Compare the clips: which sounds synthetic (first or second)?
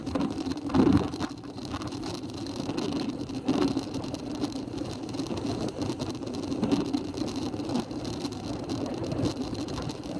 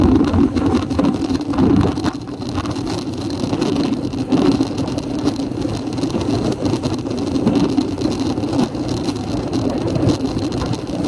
first